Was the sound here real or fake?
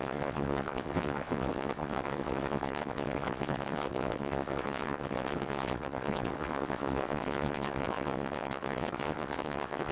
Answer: fake